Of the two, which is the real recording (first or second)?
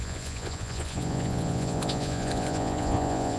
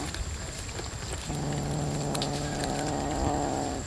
second